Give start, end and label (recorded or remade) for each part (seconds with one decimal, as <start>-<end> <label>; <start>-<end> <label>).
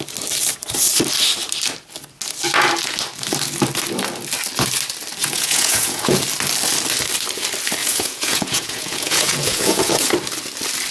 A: 0.0-5.2 recorded; 5.2-6.2 remade; 6.2-7.8 recorded; 7.8-10.1 remade; 10.1-10.9 recorded